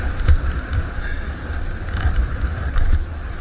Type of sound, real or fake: fake